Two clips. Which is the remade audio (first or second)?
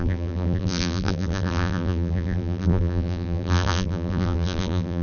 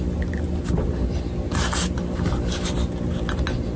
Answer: first